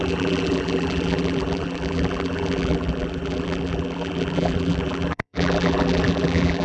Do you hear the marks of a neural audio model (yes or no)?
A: yes